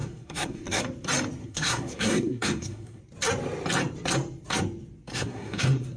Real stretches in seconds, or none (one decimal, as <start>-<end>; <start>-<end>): 0.8-1.4; 3.0-5.1